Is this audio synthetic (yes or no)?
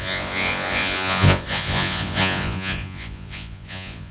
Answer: yes